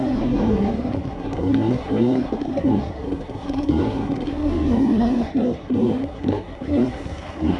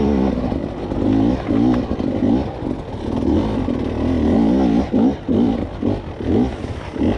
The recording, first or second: second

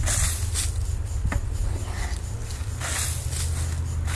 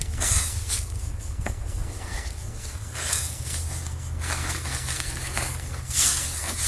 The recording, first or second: first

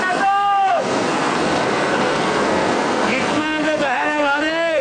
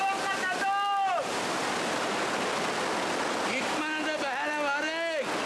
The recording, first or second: second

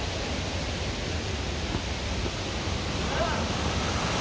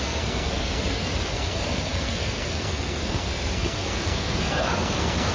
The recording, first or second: first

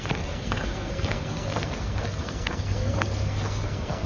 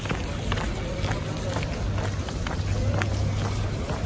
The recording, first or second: second